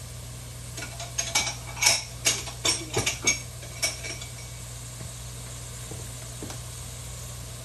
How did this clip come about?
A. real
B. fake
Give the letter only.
A